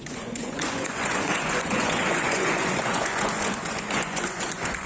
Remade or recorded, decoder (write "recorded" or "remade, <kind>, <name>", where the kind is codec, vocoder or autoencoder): remade, vocoder, Vocos